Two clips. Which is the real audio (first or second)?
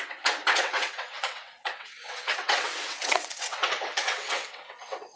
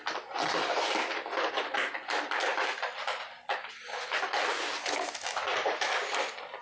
second